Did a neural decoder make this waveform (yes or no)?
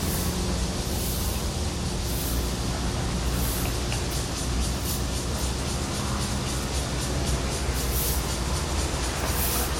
no